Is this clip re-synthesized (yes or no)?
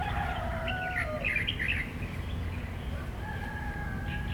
no